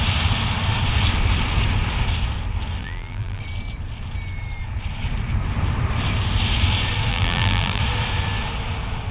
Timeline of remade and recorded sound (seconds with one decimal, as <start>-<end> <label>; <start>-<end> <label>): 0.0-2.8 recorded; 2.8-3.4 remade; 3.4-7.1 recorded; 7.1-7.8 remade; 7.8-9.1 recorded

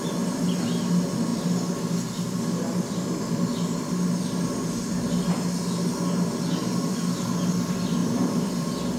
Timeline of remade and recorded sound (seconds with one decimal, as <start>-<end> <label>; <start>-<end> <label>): 0.0-8.0 recorded; 8.0-9.0 remade

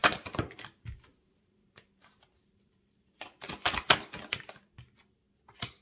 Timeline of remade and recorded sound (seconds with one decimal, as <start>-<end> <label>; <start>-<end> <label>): 0.0-3.5 remade; 3.5-5.8 recorded

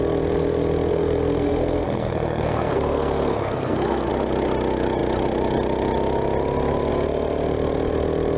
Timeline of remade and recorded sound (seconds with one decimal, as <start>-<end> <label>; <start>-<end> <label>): 0.0-0.9 recorded; 0.9-4.1 remade; 4.1-8.4 recorded

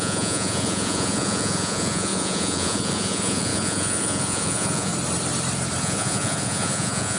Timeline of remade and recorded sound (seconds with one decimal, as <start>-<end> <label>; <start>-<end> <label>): 0.0-4.9 remade; 4.9-5.8 recorded; 5.8-7.2 remade

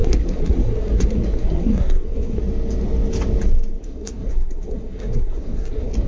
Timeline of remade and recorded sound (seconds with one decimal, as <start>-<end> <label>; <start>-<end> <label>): 0.0-2.4 remade; 2.4-3.8 recorded; 3.8-6.1 remade

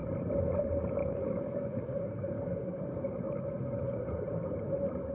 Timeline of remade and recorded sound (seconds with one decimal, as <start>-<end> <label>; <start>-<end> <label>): 0.0-1.0 recorded; 1.0-2.8 remade; 2.8-5.1 recorded